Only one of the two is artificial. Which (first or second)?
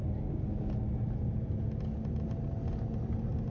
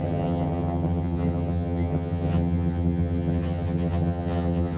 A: second